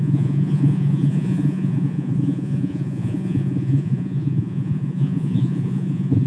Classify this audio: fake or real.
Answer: fake